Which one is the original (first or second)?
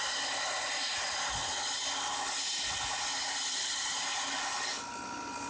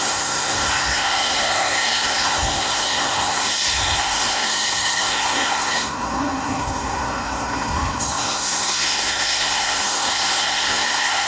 first